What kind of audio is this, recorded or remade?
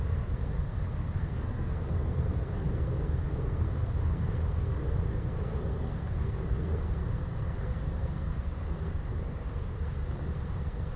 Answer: remade